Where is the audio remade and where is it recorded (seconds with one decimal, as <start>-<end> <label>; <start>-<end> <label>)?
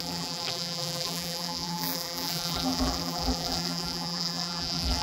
0.0-5.0 remade